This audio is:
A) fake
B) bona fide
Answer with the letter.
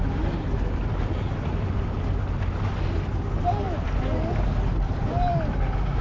B